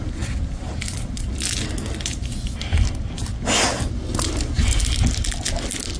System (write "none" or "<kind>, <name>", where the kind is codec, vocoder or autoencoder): none